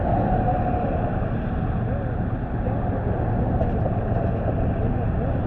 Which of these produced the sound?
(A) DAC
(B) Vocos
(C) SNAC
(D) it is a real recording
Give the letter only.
D